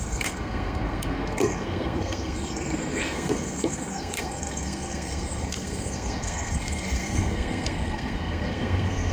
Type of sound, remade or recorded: remade